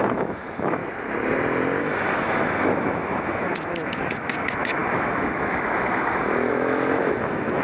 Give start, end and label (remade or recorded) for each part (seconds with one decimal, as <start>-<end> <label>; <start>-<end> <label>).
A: 0.0-0.8 remade; 0.8-1.8 recorded; 1.8-7.6 remade